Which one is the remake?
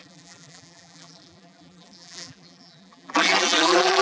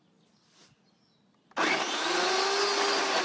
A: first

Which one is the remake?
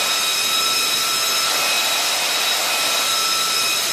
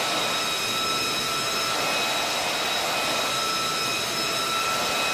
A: first